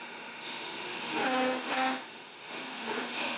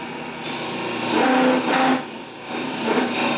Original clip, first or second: second